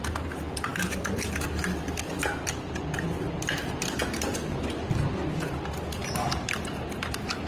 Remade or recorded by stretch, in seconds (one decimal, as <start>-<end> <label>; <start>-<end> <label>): 0.0-7.5 recorded